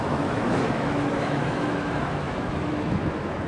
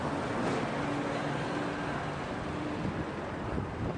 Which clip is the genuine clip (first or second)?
second